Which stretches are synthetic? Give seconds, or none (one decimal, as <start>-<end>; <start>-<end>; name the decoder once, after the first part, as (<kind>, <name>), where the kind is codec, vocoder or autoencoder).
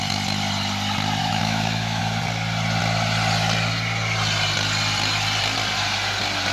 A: 1.2-2.0 (autoencoder, DAC-VAE)